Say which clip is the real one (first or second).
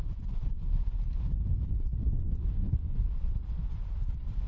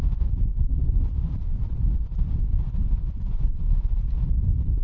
second